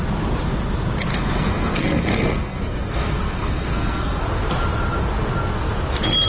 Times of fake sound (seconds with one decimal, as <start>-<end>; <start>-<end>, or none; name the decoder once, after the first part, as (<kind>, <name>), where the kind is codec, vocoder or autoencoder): 1.1-4.2 (codec, SNAC)